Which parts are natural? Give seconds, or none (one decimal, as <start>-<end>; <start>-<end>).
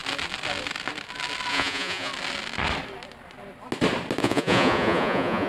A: 0.0-1.5; 2.1-4.2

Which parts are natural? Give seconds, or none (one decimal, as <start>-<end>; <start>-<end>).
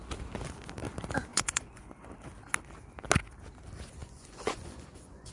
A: 0.0-1.3; 1.8-4.0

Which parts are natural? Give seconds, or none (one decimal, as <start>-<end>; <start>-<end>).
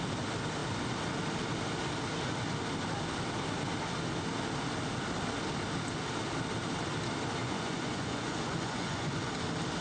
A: 0.0-7.4; 9.3-9.8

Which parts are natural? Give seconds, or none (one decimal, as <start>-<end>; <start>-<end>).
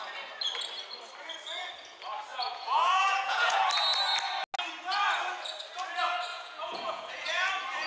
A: 0.0-2.3; 3.6-6.3; 7.5-7.9